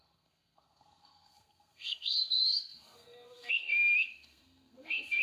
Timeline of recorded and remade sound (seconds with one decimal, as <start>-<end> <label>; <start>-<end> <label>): 0.0-5.2 remade